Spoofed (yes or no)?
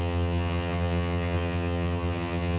yes